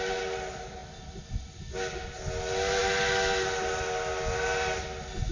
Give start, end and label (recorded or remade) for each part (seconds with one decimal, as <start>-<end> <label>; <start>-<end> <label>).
0.0-5.3 recorded